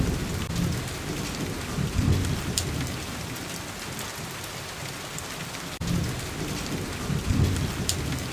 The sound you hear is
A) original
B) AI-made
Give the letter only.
A